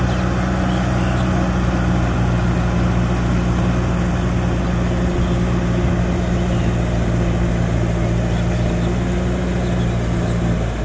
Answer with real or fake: real